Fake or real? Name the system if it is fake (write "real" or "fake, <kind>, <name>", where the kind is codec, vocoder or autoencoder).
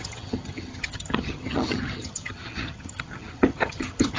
fake, vocoder, HiFi-GAN